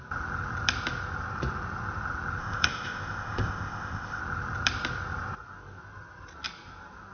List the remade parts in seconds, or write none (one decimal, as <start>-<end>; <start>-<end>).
2.4-4.2